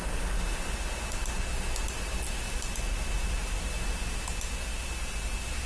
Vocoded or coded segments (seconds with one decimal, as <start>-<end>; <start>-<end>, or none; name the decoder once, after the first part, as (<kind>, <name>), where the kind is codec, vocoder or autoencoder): none